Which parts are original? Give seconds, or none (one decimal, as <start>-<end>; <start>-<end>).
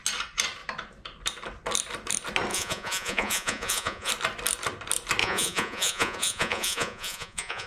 0.0-2.5; 4.1-5.2